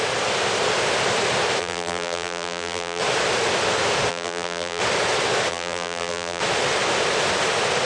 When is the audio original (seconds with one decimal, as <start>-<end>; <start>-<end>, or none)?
0.0-1.6; 3.0-4.1; 4.8-5.5; 6.4-7.8